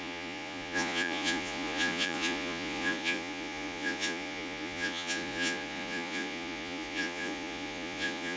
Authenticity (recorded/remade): remade